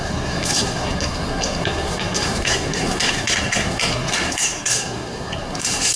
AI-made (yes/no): yes